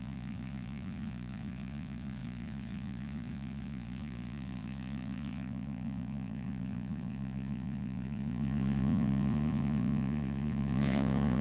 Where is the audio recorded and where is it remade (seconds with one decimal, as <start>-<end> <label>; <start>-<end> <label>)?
0.0-11.4 remade